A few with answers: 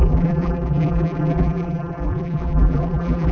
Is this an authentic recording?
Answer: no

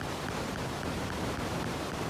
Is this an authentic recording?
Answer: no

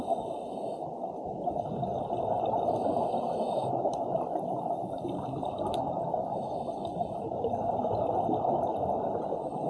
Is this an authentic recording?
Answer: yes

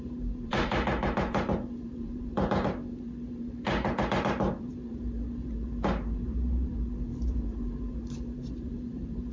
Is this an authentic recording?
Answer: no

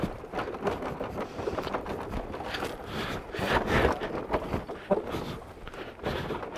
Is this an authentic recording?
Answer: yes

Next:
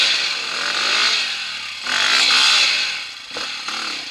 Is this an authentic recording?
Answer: yes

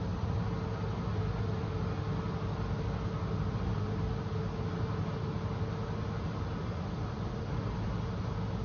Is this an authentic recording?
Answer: yes